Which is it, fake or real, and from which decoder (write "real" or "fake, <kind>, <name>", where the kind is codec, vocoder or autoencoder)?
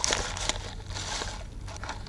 real